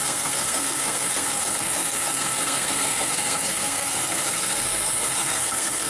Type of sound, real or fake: fake